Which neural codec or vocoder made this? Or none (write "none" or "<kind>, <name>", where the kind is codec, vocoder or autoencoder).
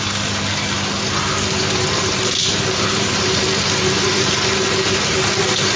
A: none